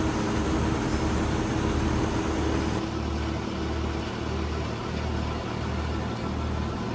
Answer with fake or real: real